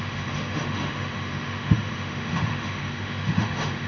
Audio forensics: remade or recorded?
remade